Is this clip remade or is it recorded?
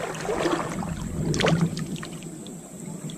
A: recorded